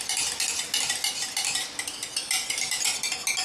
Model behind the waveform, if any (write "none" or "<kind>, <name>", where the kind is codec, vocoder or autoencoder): none